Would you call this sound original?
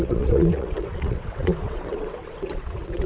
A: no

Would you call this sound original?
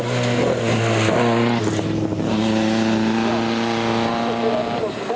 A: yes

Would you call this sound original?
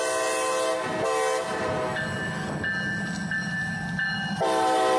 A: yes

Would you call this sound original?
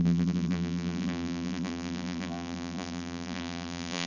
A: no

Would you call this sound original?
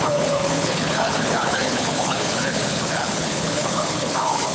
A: no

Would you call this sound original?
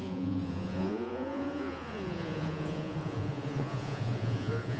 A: no